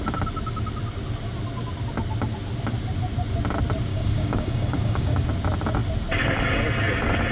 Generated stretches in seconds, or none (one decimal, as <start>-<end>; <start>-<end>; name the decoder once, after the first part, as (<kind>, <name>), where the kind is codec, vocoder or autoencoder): 3.9-5.3 (codec, DAC)